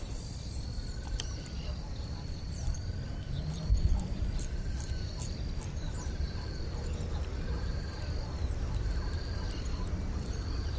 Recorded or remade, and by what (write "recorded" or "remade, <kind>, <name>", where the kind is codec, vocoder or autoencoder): remade, vocoder, BigVGAN v2